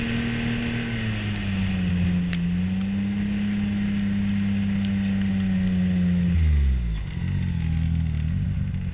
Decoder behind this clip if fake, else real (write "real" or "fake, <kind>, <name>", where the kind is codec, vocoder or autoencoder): real